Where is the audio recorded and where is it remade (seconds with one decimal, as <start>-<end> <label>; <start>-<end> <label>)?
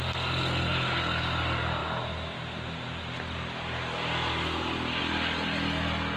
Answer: 0.0-6.2 recorded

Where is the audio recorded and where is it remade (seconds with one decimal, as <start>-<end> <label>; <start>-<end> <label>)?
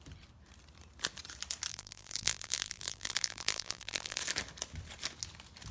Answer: 0.0-1.7 recorded; 1.7-4.2 remade; 4.2-5.7 recorded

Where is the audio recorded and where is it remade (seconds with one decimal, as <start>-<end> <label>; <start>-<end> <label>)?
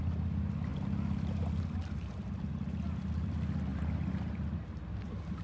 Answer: 0.0-0.7 recorded; 0.7-2.5 remade; 2.5-3.7 recorded; 3.7-4.6 remade; 4.6-5.4 recorded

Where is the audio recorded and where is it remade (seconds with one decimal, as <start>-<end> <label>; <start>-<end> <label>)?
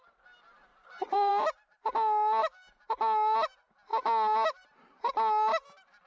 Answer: 0.0-0.7 recorded; 0.7-1.3 remade; 1.3-6.1 recorded